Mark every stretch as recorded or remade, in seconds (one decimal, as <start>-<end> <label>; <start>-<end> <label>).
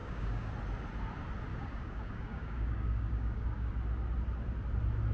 0.0-0.5 remade; 0.5-1.5 recorded; 1.5-3.7 remade; 3.7-5.1 recorded